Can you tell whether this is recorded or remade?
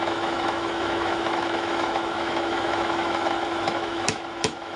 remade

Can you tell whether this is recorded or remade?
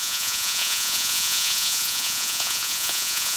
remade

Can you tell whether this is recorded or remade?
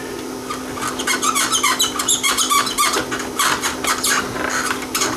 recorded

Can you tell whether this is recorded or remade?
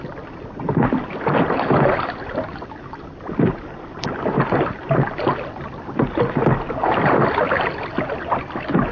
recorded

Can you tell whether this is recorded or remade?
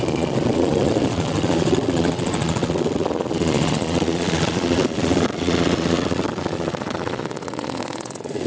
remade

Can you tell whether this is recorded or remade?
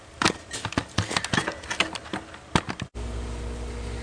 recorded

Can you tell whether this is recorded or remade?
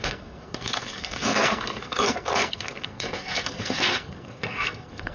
remade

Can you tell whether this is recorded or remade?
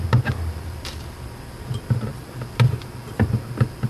recorded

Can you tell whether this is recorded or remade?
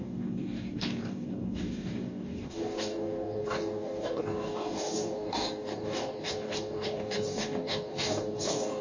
remade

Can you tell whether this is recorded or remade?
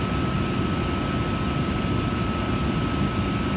recorded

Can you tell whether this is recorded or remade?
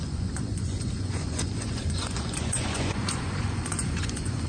remade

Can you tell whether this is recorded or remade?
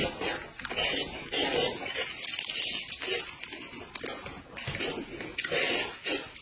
recorded